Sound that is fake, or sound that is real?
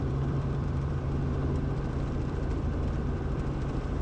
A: fake